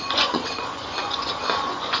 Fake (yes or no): yes